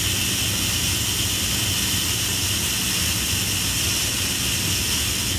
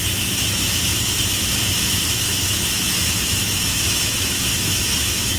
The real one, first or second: first